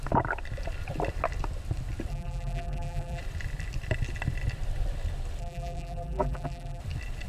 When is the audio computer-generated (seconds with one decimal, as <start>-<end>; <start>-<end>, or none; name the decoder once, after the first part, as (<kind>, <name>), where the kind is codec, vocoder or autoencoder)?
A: 2.1-3.2 (vocoder, BigVGAN v2); 5.4-6.8